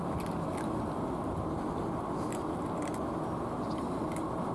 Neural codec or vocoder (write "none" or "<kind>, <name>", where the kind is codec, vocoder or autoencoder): none